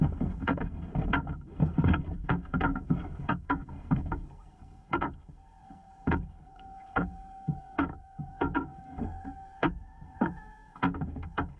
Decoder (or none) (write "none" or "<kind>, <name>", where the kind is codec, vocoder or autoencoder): codec, SNAC